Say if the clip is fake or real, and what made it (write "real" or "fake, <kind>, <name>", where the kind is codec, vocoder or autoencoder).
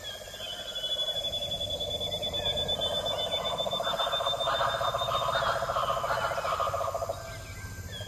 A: real